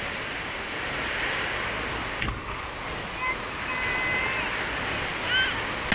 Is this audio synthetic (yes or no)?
no